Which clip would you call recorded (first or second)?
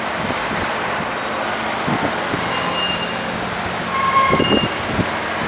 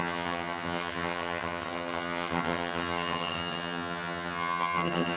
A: first